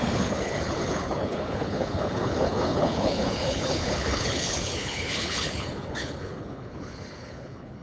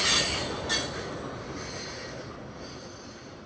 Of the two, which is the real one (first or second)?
second